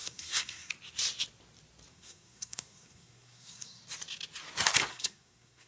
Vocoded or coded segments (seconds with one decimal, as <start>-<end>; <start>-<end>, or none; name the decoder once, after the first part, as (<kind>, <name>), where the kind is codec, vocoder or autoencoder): 0.0-0.7 (codec, SNAC); 1.9-3.8; 4.9-5.7